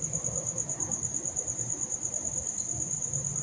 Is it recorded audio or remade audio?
recorded